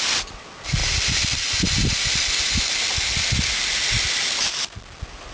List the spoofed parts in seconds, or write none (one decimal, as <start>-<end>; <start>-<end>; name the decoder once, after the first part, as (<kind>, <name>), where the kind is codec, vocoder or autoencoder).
none